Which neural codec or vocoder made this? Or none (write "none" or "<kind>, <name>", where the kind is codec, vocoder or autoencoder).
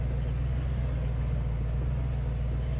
none